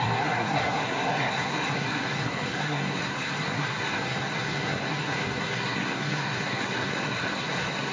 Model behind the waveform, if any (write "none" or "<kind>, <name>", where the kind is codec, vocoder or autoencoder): codec, SNAC